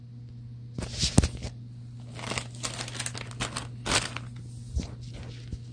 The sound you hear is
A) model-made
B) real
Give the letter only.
B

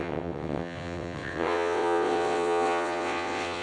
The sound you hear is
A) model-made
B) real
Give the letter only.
A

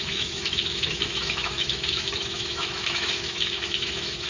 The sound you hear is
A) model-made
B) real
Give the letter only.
A